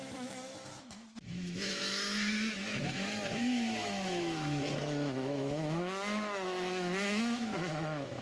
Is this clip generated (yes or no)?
yes